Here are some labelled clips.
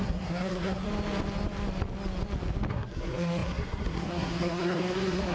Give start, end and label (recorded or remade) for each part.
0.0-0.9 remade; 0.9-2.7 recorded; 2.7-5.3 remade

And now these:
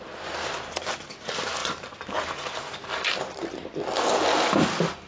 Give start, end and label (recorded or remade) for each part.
0.0-5.1 recorded

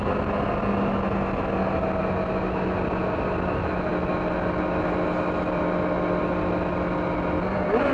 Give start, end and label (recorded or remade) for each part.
0.0-7.9 recorded

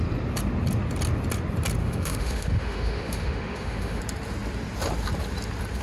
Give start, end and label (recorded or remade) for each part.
0.0-1.8 recorded; 1.8-4.0 remade; 4.0-5.8 recorded

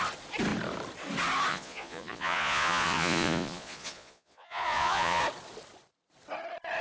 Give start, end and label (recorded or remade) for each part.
0.0-1.5 recorded; 1.5-5.2 remade; 5.2-6.8 recorded